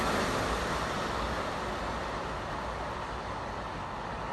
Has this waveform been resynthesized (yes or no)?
no